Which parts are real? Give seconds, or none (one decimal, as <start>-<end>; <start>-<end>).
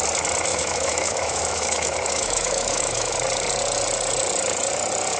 0.0-0.5; 3.1-5.2